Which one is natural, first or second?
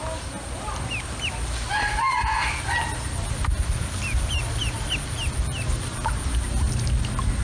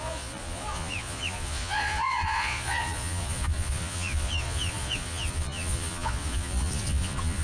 first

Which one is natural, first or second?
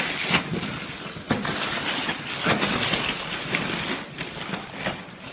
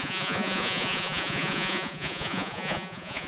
first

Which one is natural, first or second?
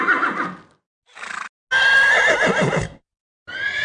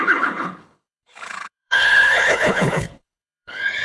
first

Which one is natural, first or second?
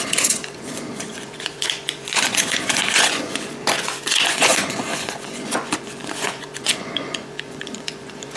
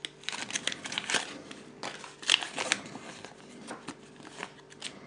second